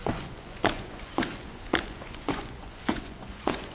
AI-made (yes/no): yes